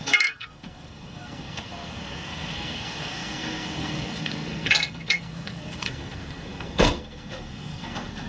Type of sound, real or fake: fake